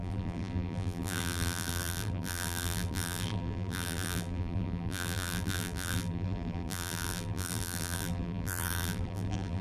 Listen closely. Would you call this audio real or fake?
fake